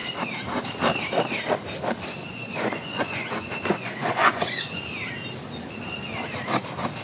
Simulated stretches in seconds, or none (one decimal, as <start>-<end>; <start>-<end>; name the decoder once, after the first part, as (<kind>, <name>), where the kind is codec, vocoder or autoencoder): 2.2-4.8 (vocoder, Vocos)